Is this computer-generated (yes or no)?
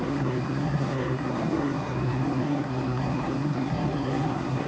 yes